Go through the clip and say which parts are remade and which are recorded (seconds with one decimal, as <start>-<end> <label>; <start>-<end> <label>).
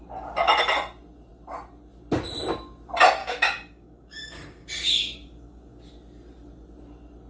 0.0-3.2 recorded; 3.2-5.8 remade; 5.8-7.3 recorded